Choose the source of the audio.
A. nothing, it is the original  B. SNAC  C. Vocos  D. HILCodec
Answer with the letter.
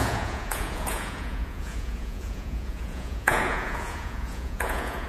C